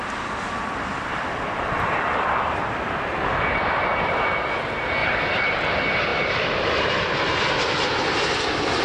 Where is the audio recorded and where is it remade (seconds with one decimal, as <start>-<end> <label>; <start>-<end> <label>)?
0.0-4.5 remade; 4.5-5.0 recorded; 5.0-5.5 remade; 5.5-6.1 recorded; 6.1-7.1 remade; 7.1-8.8 recorded